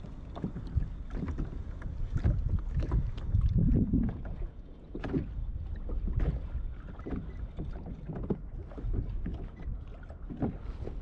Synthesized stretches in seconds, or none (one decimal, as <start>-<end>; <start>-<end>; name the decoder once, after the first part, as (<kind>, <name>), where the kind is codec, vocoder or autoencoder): 3.6-5.3 (vocoder, Vocos)

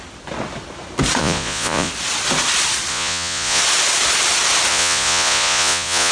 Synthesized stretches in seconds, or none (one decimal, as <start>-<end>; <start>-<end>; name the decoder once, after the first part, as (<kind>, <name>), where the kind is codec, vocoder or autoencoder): 1.2-1.9 (vocoder, Vocos); 2.9-3.6; 4.7-6.1

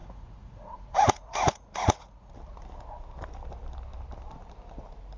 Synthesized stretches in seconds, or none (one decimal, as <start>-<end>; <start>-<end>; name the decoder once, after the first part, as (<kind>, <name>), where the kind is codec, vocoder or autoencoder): 0.0-2.3 (vocoder, Vocos)

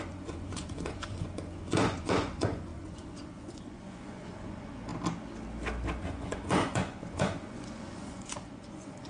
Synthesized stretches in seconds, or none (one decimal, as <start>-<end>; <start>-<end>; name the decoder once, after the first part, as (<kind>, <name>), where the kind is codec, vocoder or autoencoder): 0.0-4.9 (vocoder, Vocos); 6.0-9.1